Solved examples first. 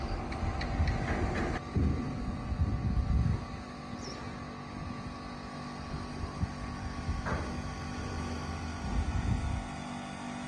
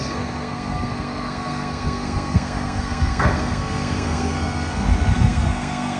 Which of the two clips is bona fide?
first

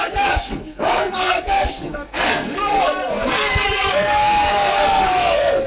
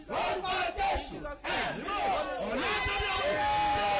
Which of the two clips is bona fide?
second